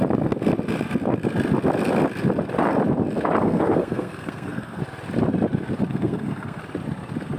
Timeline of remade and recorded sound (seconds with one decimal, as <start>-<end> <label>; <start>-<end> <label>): 0.0-3.4 recorded; 3.4-4.8 remade; 4.8-5.9 recorded; 5.9-6.6 remade; 6.6-7.4 recorded